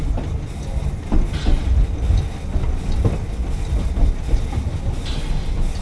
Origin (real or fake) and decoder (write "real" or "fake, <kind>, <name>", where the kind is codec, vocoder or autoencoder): real